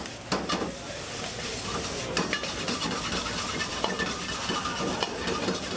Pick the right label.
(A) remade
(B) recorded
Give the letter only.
B